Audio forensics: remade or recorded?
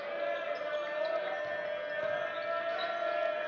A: recorded